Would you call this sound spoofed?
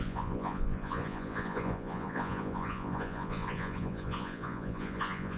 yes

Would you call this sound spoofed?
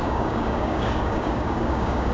yes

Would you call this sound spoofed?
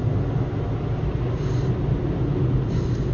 no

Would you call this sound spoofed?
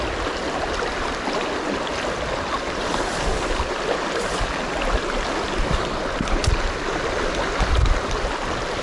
no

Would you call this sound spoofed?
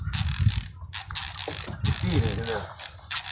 no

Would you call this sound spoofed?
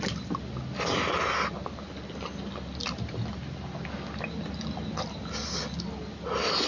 no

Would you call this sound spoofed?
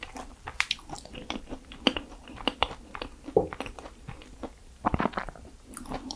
yes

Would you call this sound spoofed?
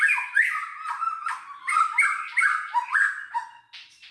no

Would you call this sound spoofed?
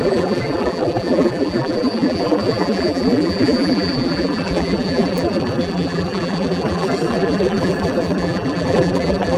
yes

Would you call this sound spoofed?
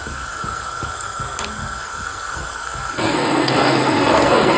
yes